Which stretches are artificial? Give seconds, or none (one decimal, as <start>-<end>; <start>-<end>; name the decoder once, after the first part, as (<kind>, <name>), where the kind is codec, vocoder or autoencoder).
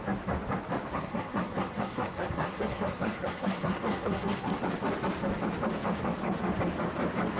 0.9-4.6 (codec, SNAC)